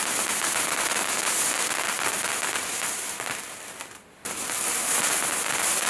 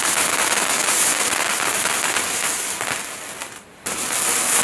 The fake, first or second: first